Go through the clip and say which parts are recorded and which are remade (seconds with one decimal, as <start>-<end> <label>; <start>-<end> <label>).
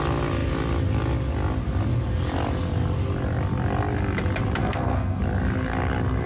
0.0-4.6 recorded; 4.6-5.2 remade; 5.2-6.3 recorded